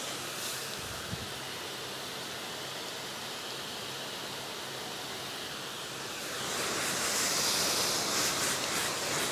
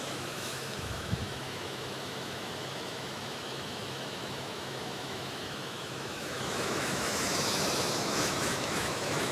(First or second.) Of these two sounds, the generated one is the second